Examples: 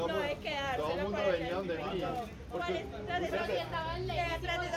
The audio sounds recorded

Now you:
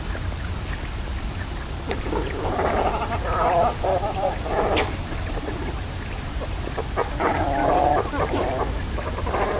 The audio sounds recorded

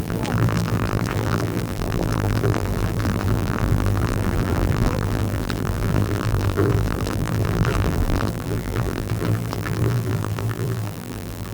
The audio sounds remade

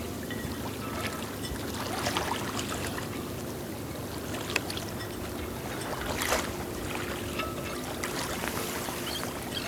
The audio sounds recorded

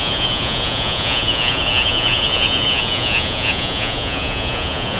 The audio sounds remade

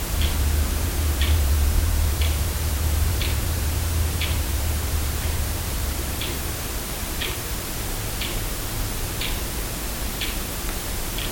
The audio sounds remade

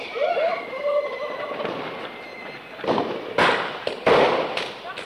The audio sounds recorded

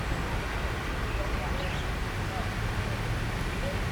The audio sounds recorded